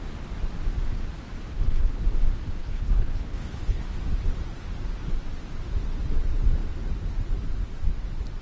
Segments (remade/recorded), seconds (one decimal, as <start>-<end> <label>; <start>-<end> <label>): 0.0-1.5 recorded; 1.5-2.0 remade; 2.0-2.6 recorded; 2.6-3.8 remade; 3.8-8.4 recorded

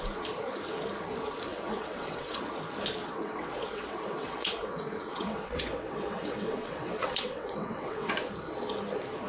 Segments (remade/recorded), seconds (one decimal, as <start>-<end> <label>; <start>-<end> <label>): 0.0-1.5 recorded; 1.5-2.4 remade; 2.4-3.0 recorded; 3.0-8.1 remade; 8.1-9.3 recorded

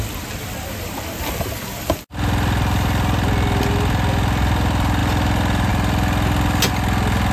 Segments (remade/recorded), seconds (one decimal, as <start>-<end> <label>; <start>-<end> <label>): 0.0-7.3 recorded

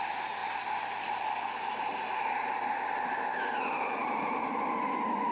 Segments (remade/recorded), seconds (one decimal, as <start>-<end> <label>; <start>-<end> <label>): 0.0-4.0 recorded; 4.0-4.7 remade; 4.7-5.3 recorded

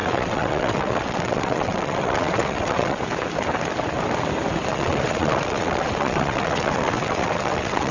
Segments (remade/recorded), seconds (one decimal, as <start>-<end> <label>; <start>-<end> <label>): 0.0-3.0 remade; 3.0-4.7 recorded; 4.7-7.9 remade